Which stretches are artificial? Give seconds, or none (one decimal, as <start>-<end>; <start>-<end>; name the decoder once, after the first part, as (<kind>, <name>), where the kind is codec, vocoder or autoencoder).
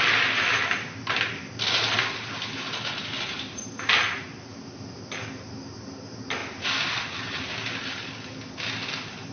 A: 4.5-5.0 (vocoder, BigVGAN v2)